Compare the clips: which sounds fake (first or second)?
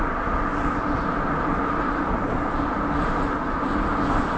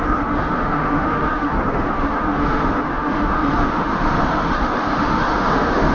second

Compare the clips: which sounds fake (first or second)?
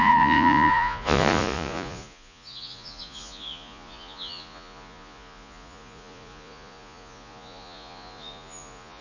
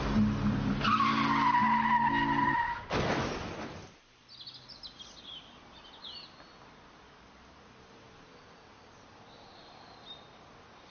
first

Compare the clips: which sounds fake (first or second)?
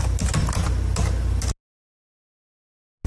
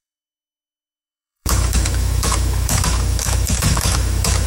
second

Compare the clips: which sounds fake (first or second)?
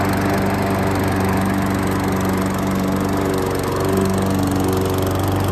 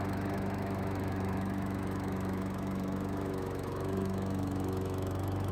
second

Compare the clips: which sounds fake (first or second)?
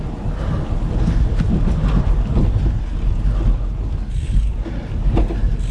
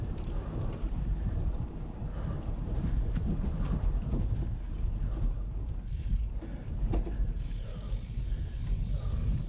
second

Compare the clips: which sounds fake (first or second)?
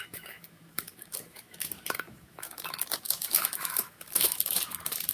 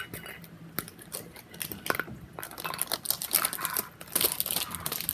first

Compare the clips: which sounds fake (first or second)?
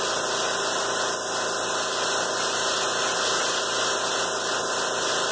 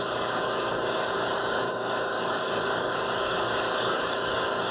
second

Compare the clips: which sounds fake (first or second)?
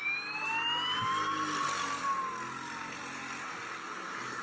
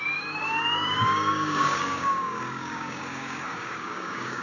second